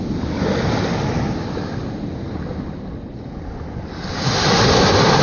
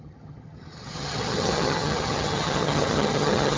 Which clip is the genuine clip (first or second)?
first